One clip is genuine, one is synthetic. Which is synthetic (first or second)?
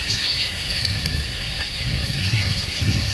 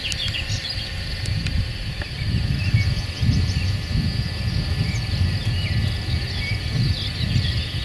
first